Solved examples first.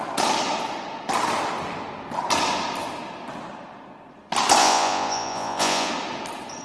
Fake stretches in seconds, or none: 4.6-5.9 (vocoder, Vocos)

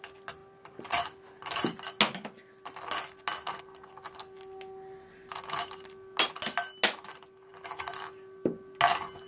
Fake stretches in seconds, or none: none

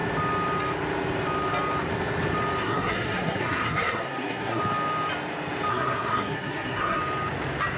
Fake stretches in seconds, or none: 2.6-4.6 (codec, SNAC); 5.7-7.0

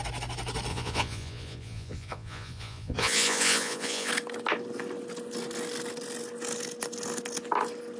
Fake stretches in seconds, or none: 0.7-4.1 (vocoder, Vocos)

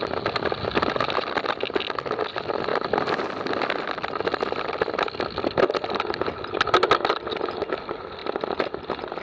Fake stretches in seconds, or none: none

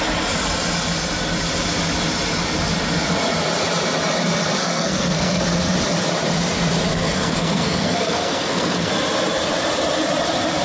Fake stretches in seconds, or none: 4.6-5.4 (codec, SNAC); 6.9-8.9

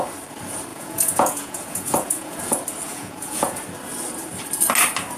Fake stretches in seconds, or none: 0.7-2.4 (vocoder, Vocos); 2.9-3.6

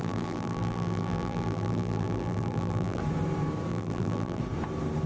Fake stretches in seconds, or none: 0.0-3.0 (vocoder, BigVGAN v2); 3.7-4.4